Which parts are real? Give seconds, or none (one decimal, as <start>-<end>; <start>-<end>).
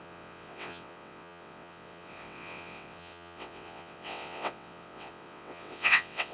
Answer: none